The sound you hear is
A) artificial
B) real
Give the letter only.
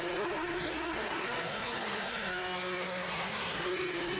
A